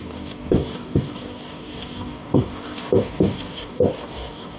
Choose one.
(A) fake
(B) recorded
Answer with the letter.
A